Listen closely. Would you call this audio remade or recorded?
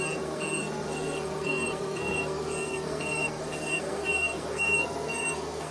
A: remade